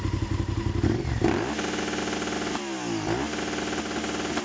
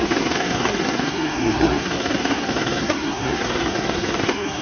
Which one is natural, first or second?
first